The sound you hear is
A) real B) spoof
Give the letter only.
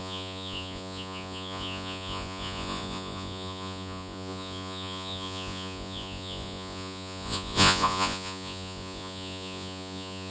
B